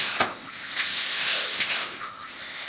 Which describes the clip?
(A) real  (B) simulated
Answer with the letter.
B